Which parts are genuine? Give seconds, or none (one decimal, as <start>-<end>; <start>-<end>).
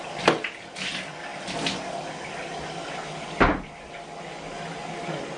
0.0-5.4